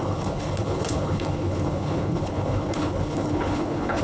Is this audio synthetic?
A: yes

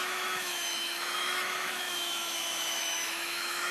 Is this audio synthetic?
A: yes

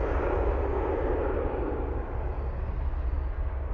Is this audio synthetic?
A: no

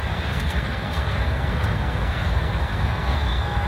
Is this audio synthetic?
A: yes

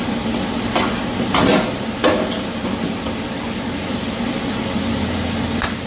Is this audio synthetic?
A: no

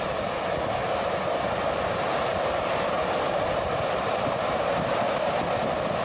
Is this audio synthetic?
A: no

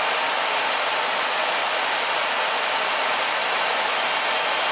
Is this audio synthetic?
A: no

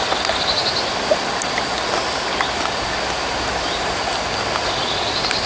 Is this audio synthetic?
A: no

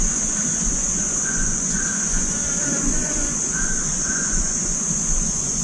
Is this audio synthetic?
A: yes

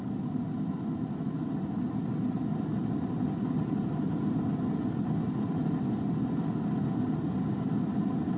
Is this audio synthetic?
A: no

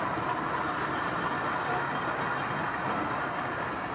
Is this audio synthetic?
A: no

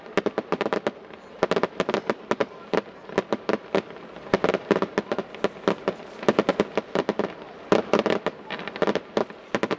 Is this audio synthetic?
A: no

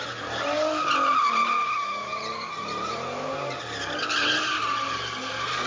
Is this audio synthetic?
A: no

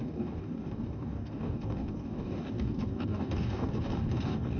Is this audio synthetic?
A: yes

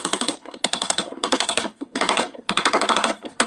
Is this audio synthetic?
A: yes